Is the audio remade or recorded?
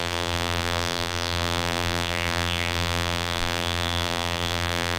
remade